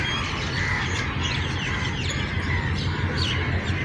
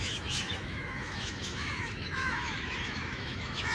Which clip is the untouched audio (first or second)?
first